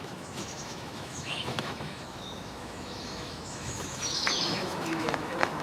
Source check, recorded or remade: remade